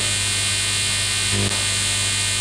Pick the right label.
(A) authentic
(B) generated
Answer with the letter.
A